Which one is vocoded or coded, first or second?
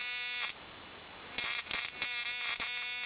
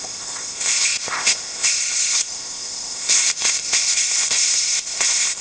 second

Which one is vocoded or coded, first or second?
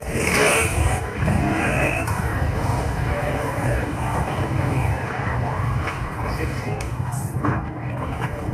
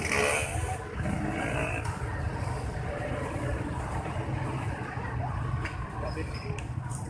first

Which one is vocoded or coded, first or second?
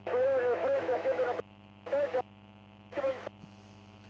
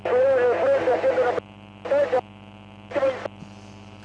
first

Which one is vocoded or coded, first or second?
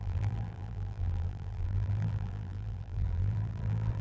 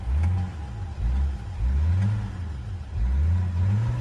first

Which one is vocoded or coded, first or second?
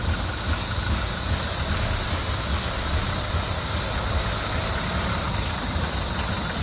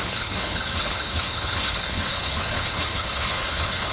second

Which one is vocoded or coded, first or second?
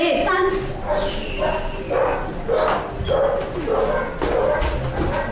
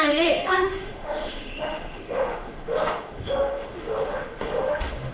second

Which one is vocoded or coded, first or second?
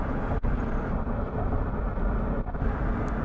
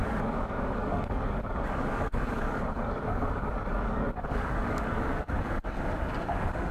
second